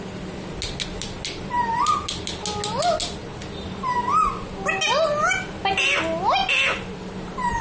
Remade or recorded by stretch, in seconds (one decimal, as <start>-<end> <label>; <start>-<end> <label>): 0.0-7.6 recorded